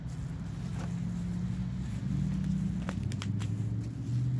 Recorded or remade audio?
recorded